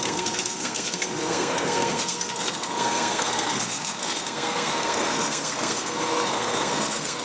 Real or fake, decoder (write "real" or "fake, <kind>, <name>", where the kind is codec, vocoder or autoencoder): fake, codec, SNAC